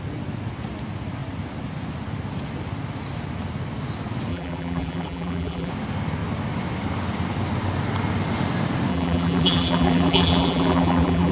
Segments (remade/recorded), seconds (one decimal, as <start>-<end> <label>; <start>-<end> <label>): 0.0-4.3 recorded; 4.3-5.7 remade; 5.7-8.9 recorded; 8.9-11.3 remade